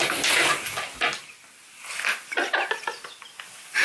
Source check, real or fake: real